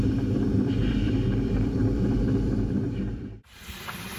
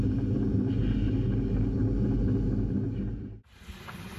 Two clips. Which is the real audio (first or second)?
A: second